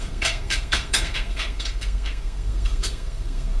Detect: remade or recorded remade